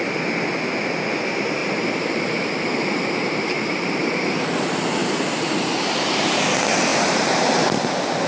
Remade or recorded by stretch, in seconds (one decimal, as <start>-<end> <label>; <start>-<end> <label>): 0.0-1.6 recorded; 1.6-4.3 remade; 4.3-5.0 recorded; 5.0-6.4 remade; 6.4-6.9 recorded; 6.9-7.5 remade; 7.5-8.3 recorded